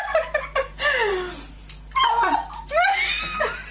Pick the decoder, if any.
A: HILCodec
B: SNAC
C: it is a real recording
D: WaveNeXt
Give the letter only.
C